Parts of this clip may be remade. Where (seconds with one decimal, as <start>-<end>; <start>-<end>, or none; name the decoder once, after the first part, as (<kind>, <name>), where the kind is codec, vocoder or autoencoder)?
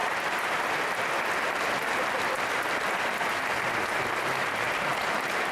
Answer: 0.0-1.0 (vocoder, BigVGAN v2); 1.9-5.5